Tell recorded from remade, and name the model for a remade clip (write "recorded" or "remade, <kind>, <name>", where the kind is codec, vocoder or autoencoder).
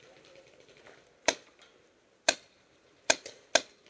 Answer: recorded